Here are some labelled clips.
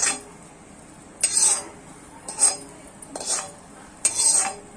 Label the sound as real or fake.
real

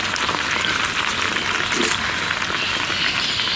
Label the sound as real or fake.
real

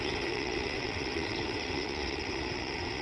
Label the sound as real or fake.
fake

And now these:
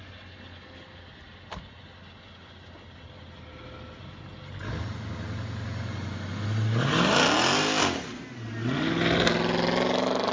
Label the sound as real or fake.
real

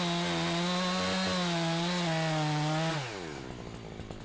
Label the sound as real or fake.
real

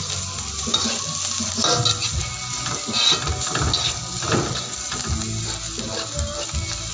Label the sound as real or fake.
real